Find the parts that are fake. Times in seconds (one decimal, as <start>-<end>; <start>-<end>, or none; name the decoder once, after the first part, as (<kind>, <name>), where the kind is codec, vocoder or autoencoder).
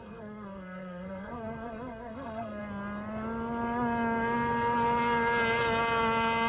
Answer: 0.0-2.6 (codec, SNAC)